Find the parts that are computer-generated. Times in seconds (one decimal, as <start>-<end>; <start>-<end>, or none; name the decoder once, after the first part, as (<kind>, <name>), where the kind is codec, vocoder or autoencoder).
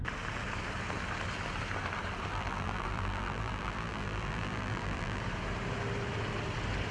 2.3-5.2 (vocoder, BigVGAN v2)